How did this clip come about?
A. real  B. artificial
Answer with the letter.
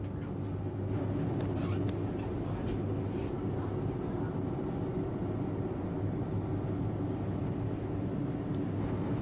A